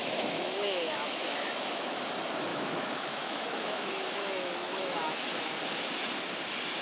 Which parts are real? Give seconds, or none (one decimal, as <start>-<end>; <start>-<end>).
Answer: 2.0-2.5; 5.5-6.8